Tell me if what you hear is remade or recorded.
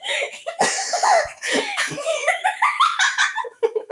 remade